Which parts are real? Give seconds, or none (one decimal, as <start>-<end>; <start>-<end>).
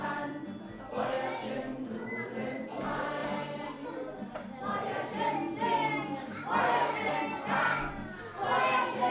0.0-9.1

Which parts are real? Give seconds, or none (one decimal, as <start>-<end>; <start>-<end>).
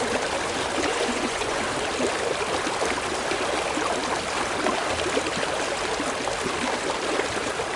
0.0-0.9; 1.6-7.8